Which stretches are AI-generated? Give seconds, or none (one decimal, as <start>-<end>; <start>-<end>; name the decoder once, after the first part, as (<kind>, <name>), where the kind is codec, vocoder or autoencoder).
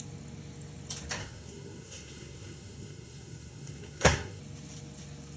1.2-4.4 (codec, SNAC)